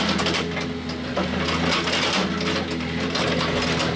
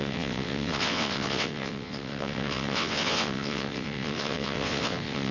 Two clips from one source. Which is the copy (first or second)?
second